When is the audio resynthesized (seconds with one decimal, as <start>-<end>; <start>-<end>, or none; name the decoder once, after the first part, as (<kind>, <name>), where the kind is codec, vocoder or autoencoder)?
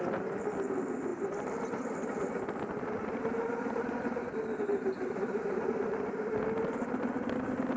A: none